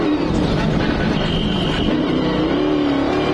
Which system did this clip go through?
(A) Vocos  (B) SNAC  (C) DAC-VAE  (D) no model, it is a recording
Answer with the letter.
D